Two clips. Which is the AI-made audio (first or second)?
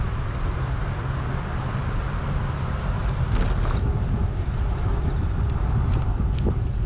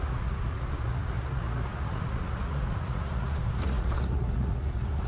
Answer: second